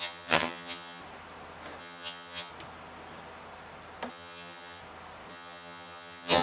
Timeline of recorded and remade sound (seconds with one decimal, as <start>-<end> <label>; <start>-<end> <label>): 0.0-1.0 remade; 1.0-1.8 recorded; 1.8-2.5 remade; 2.5-4.1 recorded; 4.1-4.8 remade; 4.8-5.3 recorded; 5.3-6.4 remade